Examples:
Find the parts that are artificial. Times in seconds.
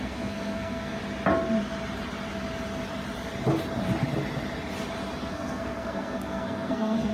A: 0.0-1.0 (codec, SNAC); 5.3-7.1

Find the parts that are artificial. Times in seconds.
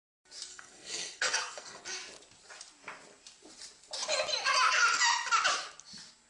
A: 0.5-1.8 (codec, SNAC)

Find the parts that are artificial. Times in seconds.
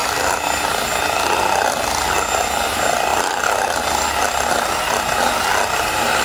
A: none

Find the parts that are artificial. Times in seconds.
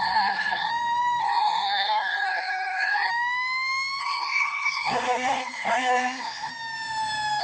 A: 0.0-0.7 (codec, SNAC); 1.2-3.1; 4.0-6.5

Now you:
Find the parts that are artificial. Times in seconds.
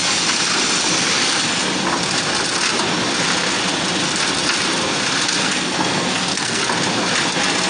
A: 5.4-6.6 (codec, SNAC)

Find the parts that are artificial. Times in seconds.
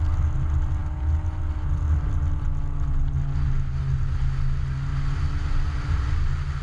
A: none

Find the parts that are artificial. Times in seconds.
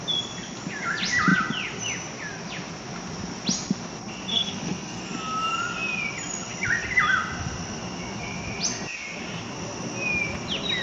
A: 4.3-5.0 (codec, SNAC)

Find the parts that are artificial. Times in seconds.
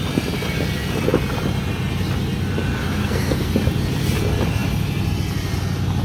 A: 3.0-3.5 (codec, SNAC)